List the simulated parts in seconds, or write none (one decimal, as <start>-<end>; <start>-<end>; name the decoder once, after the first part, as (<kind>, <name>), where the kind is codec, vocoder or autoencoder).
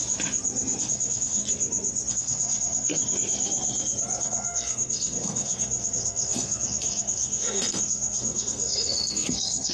0.8-1.4 (codec, SNAC); 2.1-3.0; 4.2-9.7